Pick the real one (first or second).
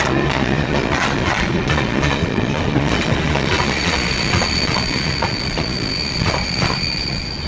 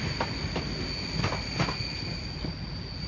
second